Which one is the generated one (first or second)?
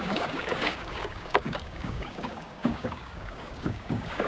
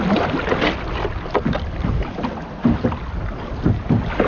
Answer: first